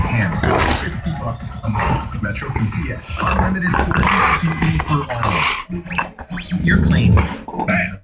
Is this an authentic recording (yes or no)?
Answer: yes